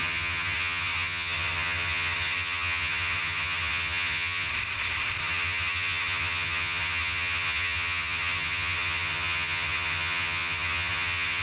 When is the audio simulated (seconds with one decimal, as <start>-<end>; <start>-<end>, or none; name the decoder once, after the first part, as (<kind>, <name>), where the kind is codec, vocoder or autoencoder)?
0.0-4.5 (vocoder, HiFi-GAN); 5.2-11.4